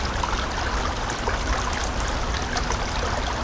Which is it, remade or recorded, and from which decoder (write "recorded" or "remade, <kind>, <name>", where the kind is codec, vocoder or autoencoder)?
recorded